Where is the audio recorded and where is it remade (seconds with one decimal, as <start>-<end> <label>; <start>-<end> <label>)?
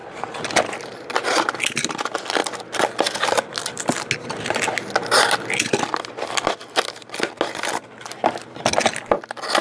0.0-9.6 recorded